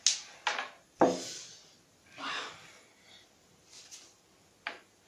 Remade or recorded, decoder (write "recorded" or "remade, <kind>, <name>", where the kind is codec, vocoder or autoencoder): recorded